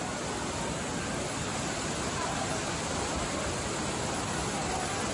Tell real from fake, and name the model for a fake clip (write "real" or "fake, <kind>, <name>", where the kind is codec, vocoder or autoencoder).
real